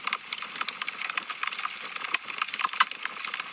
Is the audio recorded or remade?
recorded